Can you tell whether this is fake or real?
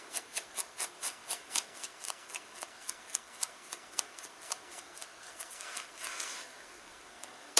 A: fake